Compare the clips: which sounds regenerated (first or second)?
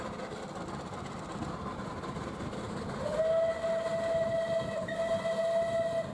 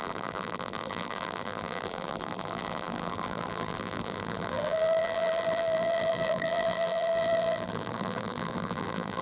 second